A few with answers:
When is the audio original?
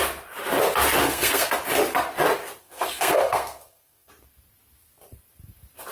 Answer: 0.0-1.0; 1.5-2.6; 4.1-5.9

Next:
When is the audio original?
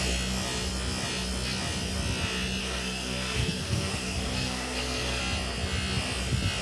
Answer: 0.0-2.6; 5.2-6.6